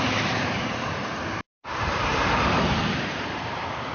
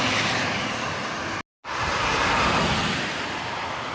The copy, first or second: first